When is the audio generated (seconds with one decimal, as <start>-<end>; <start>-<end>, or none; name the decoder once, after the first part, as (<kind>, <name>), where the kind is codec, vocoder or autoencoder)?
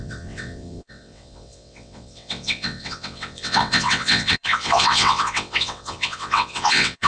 0.0-7.1 (vocoder, WaveNeXt)